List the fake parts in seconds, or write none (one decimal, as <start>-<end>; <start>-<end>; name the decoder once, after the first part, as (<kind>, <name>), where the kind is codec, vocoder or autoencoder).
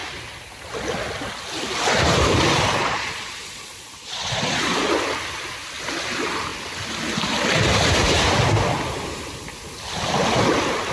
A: 2.8-4.9 (vocoder, Vocos)